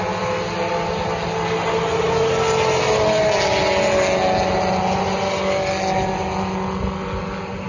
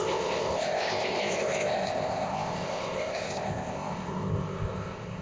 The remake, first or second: second